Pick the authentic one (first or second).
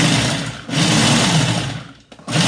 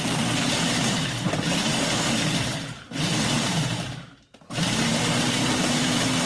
first